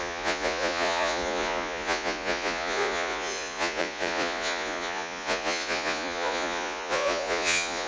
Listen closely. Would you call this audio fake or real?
fake